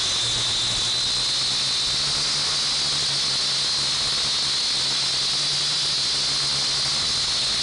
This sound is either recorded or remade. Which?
recorded